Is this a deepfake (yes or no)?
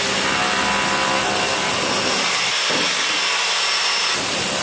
no